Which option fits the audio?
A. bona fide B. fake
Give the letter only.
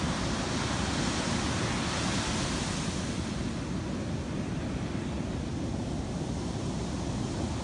A